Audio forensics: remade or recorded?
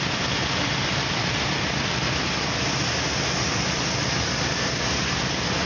recorded